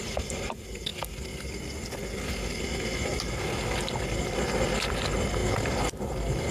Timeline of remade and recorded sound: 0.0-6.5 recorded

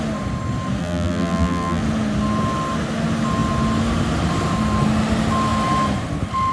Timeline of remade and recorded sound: 0.0-0.8 recorded; 0.8-1.8 remade; 1.8-6.5 recorded